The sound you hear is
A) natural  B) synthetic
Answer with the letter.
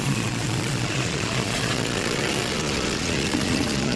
B